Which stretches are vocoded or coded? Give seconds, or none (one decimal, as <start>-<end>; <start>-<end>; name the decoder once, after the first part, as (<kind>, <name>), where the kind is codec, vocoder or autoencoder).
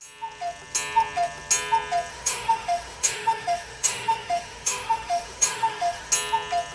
2.1-6.1 (autoencoder, DAC-VAE)